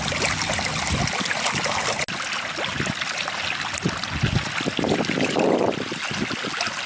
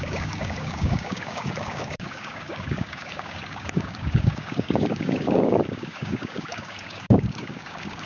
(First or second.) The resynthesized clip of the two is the second